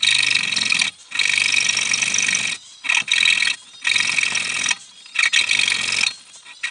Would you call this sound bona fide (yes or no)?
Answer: yes